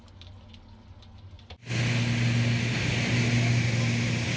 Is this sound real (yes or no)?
yes